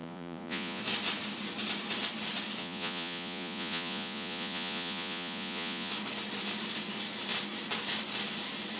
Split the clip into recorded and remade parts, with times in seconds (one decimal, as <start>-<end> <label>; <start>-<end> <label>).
0.0-0.8 remade; 0.8-2.6 recorded; 2.6-5.9 remade; 5.9-8.8 recorded